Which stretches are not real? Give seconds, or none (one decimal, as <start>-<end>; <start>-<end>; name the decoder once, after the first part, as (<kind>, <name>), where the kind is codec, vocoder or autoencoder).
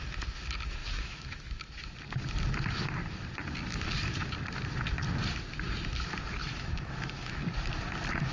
0.8-1.7 (autoencoder, DAC-VAE); 6.4-7.4